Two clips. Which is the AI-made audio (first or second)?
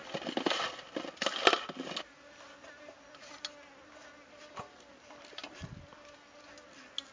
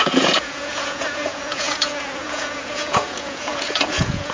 second